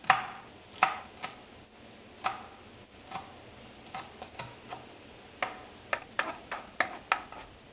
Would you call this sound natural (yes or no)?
yes